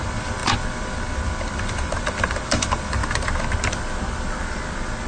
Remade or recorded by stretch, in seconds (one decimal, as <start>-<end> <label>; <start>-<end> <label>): 0.0-3.0 remade; 3.0-5.1 recorded